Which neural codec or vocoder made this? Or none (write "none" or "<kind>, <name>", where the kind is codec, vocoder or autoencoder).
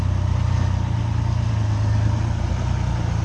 none